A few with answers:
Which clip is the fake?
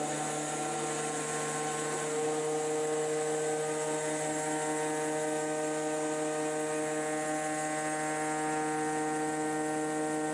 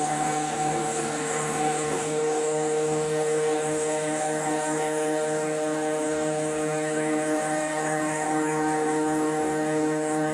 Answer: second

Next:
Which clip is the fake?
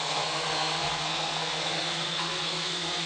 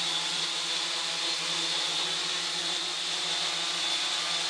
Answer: first